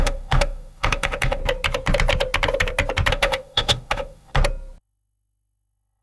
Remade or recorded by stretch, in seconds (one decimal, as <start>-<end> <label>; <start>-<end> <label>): 0.0-1.4 remade; 1.4-3.1 recorded; 3.1-4.3 remade; 4.3-4.8 recorded; 4.8-6.0 remade